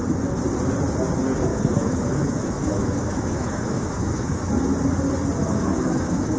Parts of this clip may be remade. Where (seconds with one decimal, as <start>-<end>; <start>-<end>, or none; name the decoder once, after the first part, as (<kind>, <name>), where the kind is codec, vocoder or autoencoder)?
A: 1.5-4.5 (autoencoder, DAC-VAE); 5.4-6.4